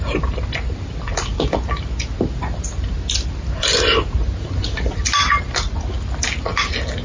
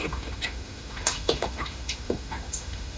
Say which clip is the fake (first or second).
second